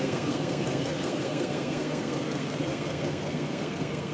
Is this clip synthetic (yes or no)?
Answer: yes